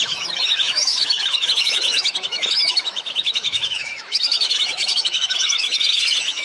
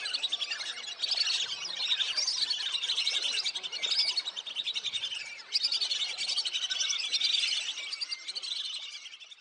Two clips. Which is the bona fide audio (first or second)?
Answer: second